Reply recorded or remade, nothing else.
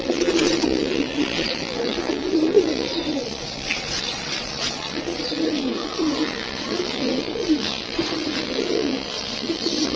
remade